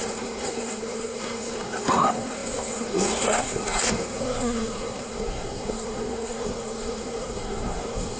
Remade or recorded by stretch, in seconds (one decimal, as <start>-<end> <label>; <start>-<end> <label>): 0.0-8.2 remade

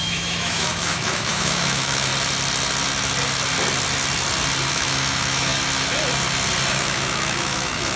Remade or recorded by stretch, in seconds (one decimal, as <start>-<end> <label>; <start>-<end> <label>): 0.0-2.1 remade; 2.1-4.7 recorded; 4.7-5.5 remade; 5.5-6.7 recorded; 6.7-8.0 remade

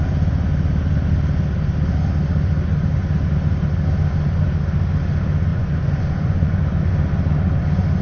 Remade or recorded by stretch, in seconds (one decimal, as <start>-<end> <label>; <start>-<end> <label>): 0.0-5.5 recorded; 5.5-6.6 remade; 6.6-8.0 recorded

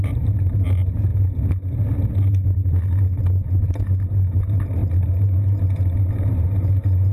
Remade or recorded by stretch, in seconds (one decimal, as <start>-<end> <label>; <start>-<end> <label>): 0.0-1.1 remade; 1.1-3.6 recorded; 3.6-7.1 remade